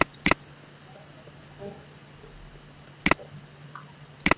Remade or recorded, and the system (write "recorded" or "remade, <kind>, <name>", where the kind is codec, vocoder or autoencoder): recorded